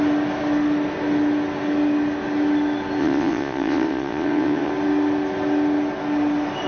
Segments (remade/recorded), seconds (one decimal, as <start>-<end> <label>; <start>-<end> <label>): 0.0-3.0 recorded; 3.0-4.7 remade; 4.7-6.7 recorded